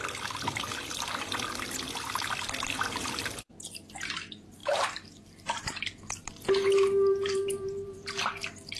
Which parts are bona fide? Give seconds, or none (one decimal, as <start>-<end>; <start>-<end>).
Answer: 0.0-4.6; 5.6-8.8